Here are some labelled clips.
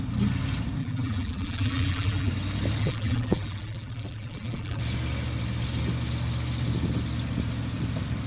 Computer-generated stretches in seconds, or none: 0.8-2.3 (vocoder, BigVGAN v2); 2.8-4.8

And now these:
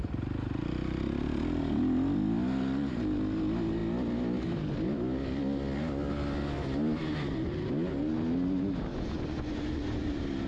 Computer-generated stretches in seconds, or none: 8.9-10.1 (vocoder, Vocos)

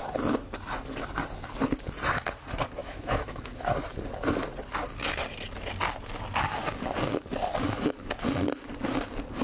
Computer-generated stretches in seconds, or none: 2.8-3.7 (autoencoder, DAC-VAE)

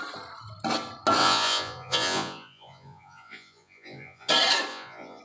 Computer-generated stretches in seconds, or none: 1.2-4.3 (vocoder, Vocos); 4.7-5.2

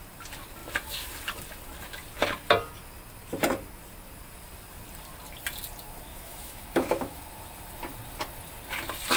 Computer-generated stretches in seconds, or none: 6.1-7.2 (autoencoder, DAC-VAE)

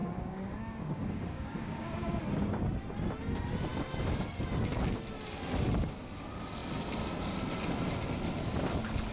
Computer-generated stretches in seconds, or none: 0.0-2.2 (codec, DAC)